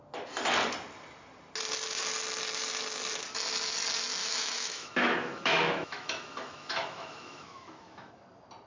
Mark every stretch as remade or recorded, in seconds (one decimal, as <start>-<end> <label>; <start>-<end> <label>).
0.0-4.2 recorded; 4.2-8.1 remade; 8.1-8.7 recorded